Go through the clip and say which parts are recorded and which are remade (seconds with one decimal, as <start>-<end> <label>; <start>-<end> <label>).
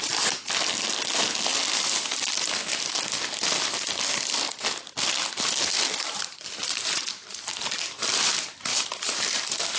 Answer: 0.0-5.2 recorded; 5.2-7.3 remade; 7.3-8.7 recorded; 8.7-9.8 remade